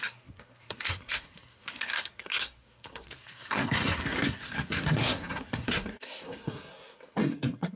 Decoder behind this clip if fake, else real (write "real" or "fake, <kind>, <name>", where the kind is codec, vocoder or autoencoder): fake, codec, SNAC